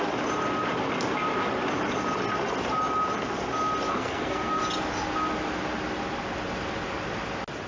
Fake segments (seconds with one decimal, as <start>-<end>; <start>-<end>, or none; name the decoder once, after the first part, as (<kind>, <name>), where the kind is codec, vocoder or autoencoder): 3.9-4.6 (codec, SNAC)